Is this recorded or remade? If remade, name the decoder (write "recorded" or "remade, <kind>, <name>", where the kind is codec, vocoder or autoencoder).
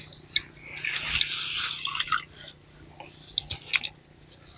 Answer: recorded